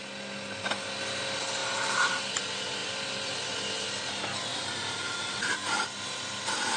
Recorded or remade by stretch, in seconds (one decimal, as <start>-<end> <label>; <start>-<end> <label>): 0.0-1.6 recorded; 1.6-2.2 remade; 2.2-4.5 recorded; 4.5-5.8 remade; 5.8-6.8 recorded